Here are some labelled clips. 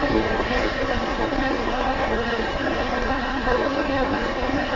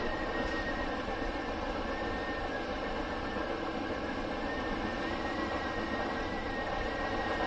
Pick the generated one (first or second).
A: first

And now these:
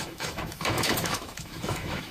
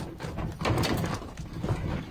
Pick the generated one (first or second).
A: first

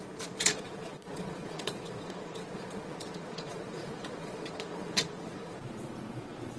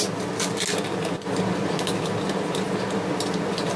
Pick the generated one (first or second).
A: first